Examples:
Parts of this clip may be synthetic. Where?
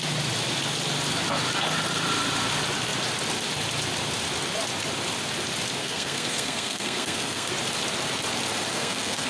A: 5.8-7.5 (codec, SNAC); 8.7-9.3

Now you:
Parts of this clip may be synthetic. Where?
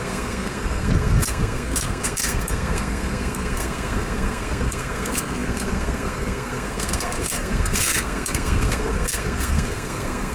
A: 0.0-10.3 (codec, SNAC)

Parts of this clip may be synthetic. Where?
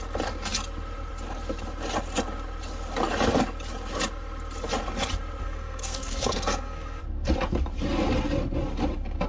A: 5.4-7.0 (codec, SNAC)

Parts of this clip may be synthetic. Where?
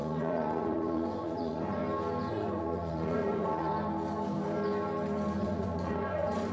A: 0.0-1.8 (vocoder, Vocos); 2.3-3.7; 5.4-6.5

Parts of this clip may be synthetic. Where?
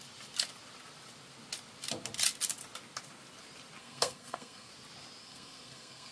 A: 3.8-4.7 (codec, SNAC); 5.2-6.1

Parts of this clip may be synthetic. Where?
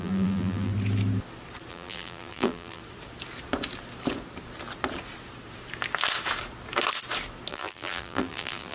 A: 0.0-0.7 (vocoder, BigVGAN v2); 1.7-2.8; 7.5-8.7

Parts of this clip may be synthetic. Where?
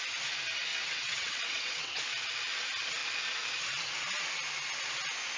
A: 0.7-2.0 (vocoder, WaveNeXt)